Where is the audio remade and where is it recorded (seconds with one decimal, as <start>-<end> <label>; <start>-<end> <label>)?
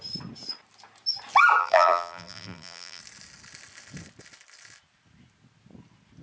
0.0-1.6 recorded; 1.6-3.0 remade; 3.0-6.2 recorded